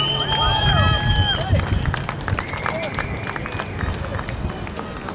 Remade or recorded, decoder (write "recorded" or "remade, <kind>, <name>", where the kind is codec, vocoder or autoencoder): recorded